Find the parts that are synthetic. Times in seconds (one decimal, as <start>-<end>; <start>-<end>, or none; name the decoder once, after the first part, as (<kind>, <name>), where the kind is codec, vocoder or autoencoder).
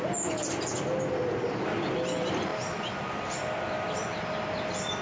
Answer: none